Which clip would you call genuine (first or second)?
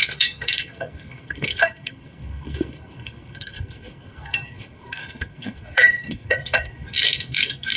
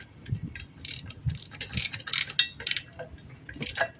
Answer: second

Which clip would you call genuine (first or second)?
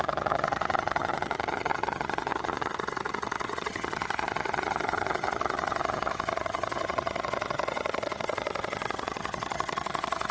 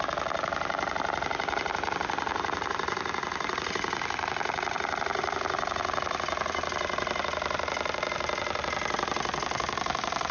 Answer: second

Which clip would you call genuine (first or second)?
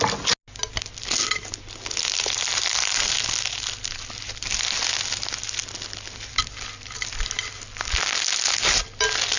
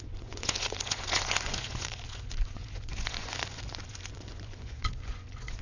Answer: first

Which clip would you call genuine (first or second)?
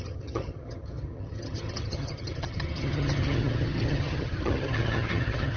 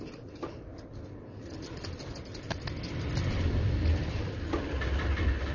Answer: second